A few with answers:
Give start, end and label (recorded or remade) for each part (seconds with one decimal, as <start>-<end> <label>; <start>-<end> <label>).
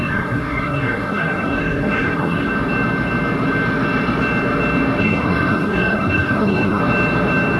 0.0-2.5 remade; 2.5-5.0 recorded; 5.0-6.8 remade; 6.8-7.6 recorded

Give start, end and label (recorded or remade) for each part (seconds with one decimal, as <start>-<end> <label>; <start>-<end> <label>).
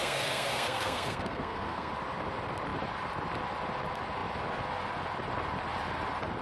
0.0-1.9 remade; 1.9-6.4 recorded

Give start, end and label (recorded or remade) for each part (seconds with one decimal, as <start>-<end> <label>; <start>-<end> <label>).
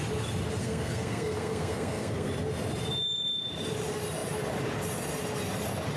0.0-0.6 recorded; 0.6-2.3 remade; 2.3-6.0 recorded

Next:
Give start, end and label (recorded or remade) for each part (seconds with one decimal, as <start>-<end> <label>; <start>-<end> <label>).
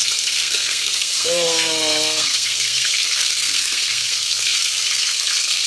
0.0-5.7 remade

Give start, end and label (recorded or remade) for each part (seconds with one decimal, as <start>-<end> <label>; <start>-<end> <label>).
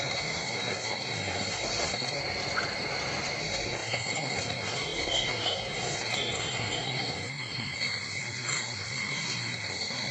0.0-2.2 remade; 2.2-3.4 recorded; 3.4-10.1 remade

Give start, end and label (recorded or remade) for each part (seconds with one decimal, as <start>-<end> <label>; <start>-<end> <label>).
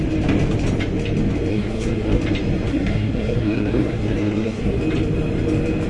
0.0-1.5 recorded; 1.5-2.2 remade; 2.2-2.7 recorded; 2.7-4.8 remade; 4.8-5.9 recorded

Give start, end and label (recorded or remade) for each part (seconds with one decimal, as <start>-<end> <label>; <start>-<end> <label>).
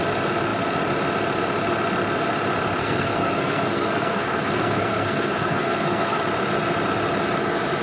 0.0-2.8 recorded; 2.8-6.2 remade; 6.2-7.8 recorded